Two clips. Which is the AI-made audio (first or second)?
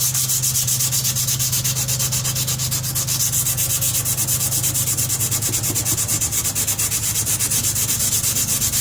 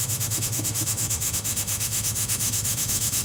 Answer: second